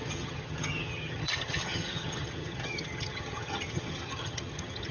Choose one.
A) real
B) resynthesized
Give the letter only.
B